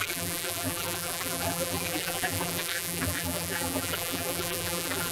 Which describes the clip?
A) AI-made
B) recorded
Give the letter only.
A